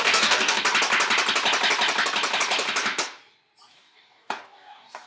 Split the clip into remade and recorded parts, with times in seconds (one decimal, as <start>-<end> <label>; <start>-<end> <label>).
0.0-0.6 remade; 0.6-3.7 recorded; 3.7-5.1 remade